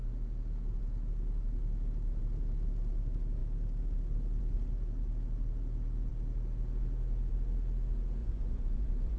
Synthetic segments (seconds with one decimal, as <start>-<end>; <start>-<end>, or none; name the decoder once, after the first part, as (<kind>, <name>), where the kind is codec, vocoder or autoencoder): 8.2-9.2 (vocoder, Vocos)